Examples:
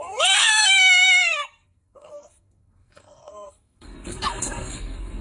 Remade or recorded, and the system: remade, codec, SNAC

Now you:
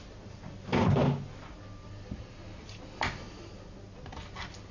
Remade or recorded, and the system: recorded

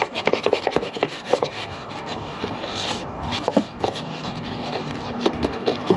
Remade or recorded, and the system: remade, codec, DAC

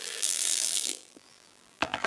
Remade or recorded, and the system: remade, vocoder, BigVGAN v2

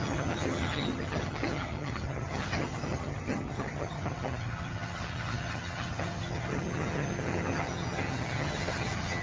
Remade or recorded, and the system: remade, vocoder, HiFi-GAN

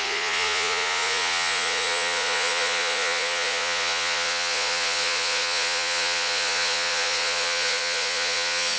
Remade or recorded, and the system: remade, vocoder, Vocos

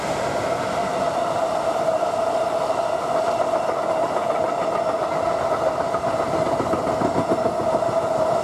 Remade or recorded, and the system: recorded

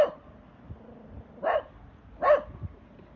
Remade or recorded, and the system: recorded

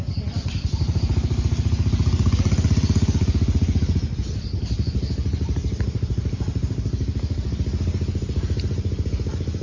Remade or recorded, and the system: recorded